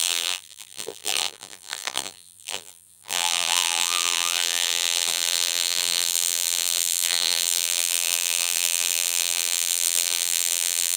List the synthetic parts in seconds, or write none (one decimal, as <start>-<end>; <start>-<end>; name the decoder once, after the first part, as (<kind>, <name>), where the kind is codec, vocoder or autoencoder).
0.0-11.0 (vocoder, BigVGAN v2)